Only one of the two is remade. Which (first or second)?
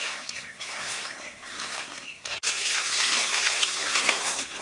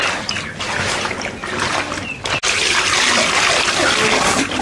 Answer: first